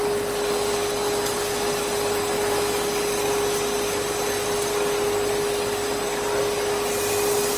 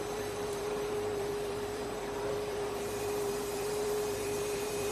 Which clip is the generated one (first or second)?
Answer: second